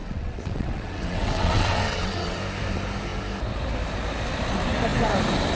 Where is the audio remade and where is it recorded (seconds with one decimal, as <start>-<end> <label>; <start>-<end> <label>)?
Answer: 0.0-2.4 remade; 2.4-5.6 recorded